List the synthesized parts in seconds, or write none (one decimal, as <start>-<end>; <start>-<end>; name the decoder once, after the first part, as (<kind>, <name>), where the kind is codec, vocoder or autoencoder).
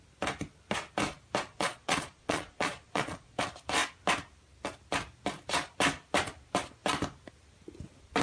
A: 1.5-3.4 (vocoder, Vocos)